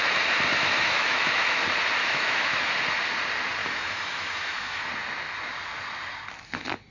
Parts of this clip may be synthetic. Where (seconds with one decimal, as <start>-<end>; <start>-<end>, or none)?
0.5-1.6; 2.0-2.6; 3.6-4.9